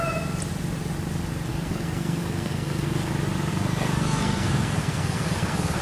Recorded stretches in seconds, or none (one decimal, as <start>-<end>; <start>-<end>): 0.0-1.5; 3.1-3.5